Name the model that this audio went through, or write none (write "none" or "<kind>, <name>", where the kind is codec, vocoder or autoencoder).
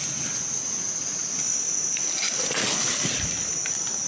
none